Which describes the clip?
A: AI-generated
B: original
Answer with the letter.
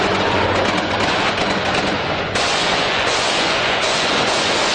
A